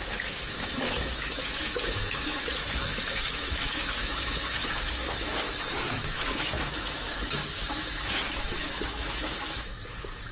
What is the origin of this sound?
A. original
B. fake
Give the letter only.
B